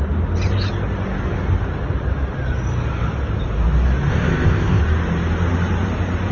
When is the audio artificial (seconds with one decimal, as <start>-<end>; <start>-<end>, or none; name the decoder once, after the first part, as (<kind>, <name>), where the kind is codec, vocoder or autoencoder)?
4.1-4.8 (codec, ZipCodec)